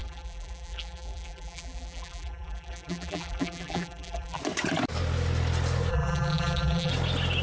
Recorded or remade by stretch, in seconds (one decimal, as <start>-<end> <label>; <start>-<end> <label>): 0.0-4.4 remade; 4.4-5.9 recorded; 5.9-6.9 remade; 6.9-7.4 recorded